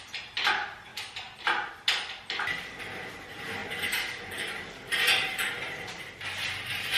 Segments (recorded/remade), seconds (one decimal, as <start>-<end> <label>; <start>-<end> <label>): 0.0-7.0 recorded